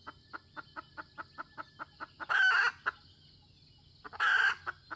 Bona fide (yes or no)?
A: yes